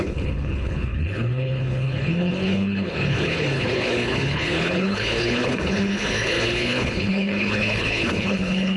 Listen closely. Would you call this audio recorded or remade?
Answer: remade